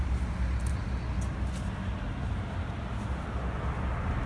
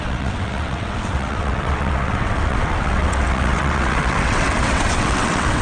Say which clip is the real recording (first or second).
first